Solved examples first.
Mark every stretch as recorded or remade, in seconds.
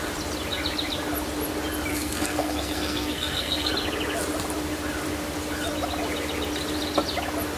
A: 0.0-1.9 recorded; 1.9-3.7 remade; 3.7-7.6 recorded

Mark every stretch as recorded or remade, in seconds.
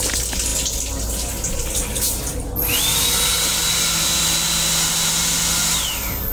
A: 0.0-6.3 recorded